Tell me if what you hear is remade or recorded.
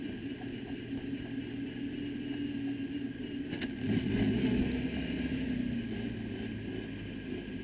recorded